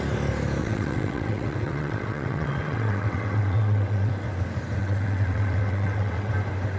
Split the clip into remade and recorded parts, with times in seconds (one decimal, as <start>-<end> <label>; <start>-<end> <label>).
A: 0.0-0.6 recorded; 0.6-4.1 remade; 4.1-4.8 recorded; 4.8-6.3 remade; 6.3-6.8 recorded